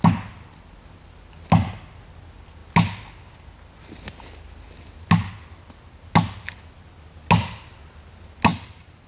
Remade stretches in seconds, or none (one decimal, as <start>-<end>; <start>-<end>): 8.5-9.1